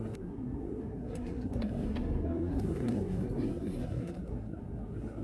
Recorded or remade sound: remade